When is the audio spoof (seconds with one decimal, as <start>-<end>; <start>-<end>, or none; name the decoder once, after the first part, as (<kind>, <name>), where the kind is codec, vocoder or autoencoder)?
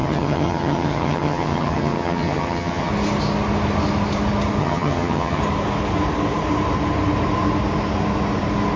0.0-2.9 (vocoder, HiFi-GAN); 4.6-5.4